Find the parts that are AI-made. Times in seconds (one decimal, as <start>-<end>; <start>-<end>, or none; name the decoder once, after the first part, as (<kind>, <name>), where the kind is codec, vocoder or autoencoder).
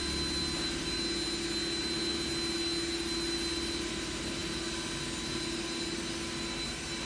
none